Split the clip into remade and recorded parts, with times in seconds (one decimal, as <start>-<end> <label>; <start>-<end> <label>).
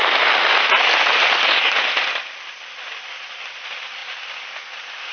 0.0-5.1 recorded